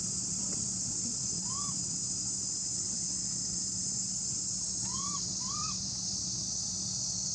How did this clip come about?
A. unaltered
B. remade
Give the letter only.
B